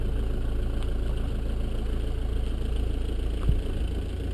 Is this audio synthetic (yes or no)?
no